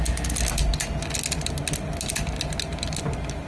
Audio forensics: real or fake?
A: real